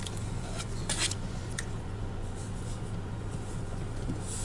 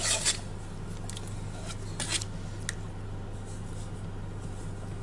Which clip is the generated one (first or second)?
first